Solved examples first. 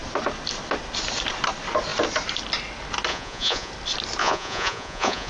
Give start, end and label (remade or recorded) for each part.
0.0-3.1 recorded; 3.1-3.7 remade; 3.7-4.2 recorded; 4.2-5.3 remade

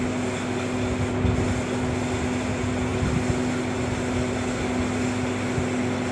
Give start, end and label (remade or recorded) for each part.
0.0-6.1 recorded